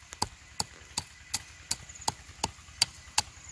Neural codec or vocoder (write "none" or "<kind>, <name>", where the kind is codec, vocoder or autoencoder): none